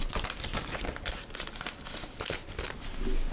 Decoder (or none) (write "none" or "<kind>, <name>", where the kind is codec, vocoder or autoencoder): none